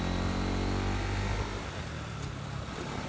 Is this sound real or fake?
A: real